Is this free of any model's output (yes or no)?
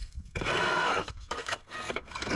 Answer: no